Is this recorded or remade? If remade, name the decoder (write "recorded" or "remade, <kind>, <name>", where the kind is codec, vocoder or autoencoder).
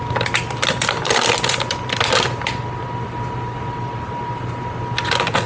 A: recorded